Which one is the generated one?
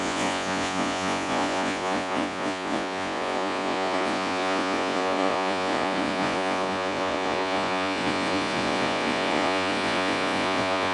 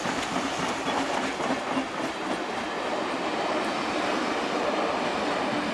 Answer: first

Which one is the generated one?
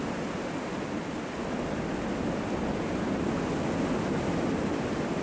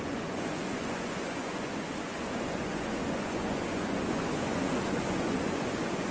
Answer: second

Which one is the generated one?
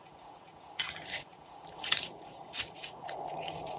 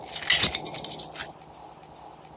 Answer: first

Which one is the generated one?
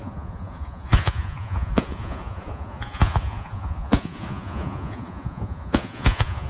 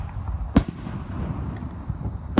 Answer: first